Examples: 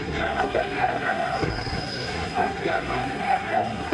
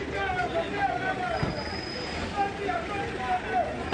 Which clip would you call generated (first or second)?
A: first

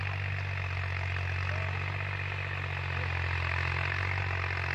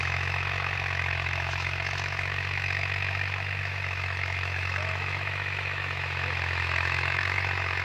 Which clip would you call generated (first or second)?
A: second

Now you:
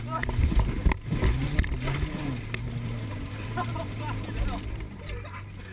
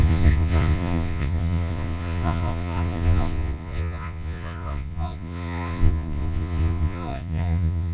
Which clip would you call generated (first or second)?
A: second